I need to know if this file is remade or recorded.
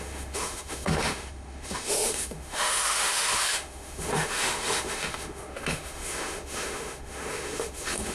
remade